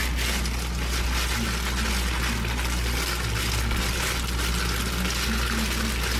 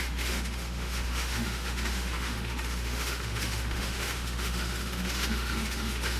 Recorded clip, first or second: first